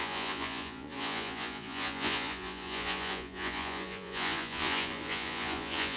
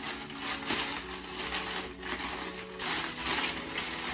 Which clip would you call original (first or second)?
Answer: second